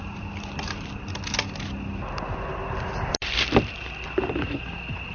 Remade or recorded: recorded